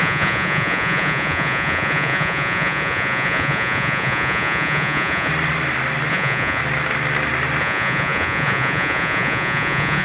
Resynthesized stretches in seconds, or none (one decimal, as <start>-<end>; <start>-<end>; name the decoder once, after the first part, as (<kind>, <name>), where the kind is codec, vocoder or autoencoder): 0.0-5.3 (vocoder, Vocos); 6.1-6.6; 7.6-10.0

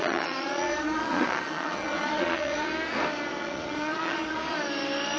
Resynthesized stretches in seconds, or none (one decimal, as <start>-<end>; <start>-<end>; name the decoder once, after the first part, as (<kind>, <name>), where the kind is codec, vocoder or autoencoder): 0.0-2.7 (vocoder, Vocos); 3.4-4.4

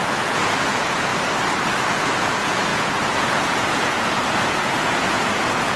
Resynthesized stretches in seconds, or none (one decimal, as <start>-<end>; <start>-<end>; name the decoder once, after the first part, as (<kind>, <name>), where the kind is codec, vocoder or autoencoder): 0.0-1.1 (vocoder, Vocos); 1.9-5.8

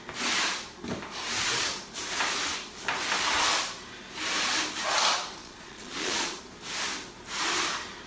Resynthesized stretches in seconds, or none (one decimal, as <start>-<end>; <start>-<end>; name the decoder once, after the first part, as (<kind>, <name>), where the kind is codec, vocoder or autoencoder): 5.4-6.4 (vocoder, Vocos)

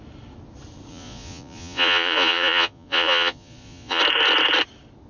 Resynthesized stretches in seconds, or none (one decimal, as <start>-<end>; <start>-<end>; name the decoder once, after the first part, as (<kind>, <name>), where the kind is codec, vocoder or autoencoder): 0.9-4.0 (vocoder, Vocos)